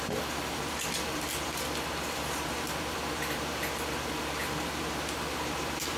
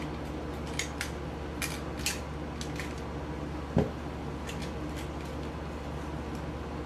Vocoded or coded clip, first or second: first